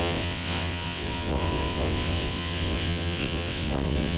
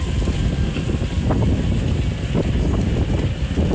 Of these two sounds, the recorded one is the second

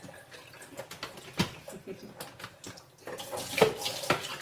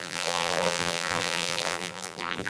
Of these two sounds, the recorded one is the first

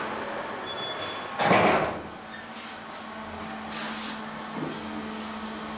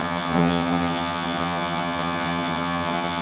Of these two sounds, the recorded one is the first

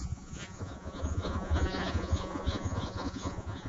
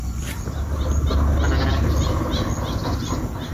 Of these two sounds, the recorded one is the second